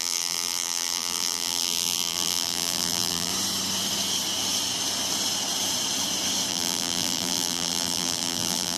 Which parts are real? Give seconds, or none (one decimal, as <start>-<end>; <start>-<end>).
3.3-6.5